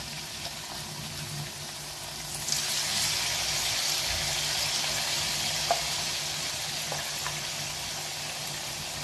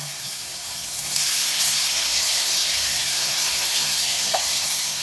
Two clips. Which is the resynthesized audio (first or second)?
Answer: second